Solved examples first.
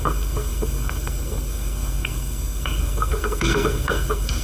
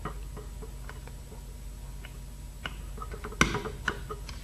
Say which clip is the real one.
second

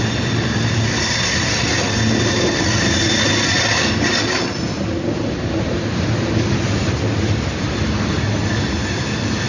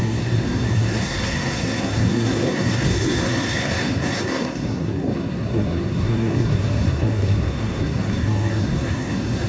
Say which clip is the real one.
first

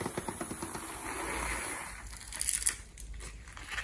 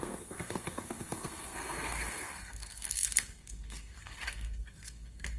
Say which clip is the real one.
first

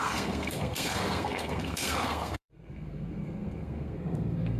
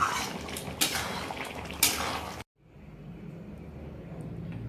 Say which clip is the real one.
second